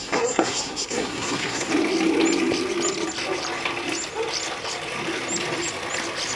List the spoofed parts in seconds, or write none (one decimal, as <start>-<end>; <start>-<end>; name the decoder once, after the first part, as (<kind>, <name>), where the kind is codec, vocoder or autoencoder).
0.0-1.7 (codec, SNAC)